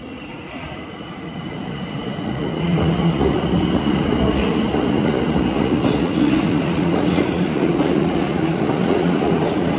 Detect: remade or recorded remade